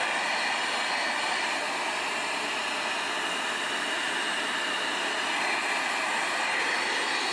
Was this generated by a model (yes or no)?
no